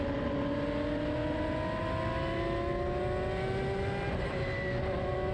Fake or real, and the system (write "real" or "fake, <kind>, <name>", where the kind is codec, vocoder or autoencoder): real